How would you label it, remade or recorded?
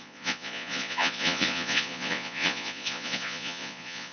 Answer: remade